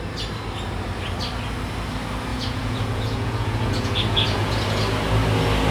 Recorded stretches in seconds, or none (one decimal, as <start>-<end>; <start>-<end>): 0.0-2.3; 4.8-5.7